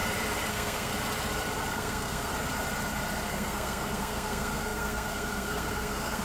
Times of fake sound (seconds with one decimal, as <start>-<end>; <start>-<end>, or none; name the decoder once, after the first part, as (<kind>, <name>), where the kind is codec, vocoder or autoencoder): 0.5-0.9 (codec, SNAC); 1.7-2.3; 3.3-6.2